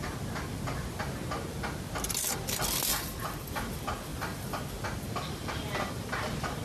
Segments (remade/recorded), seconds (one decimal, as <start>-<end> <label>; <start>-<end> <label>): 0.0-2.9 recorded; 2.9-3.5 remade; 3.5-4.1 recorded; 4.1-4.6 remade; 4.6-6.6 recorded